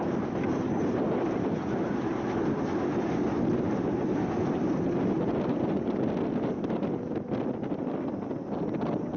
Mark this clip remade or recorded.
recorded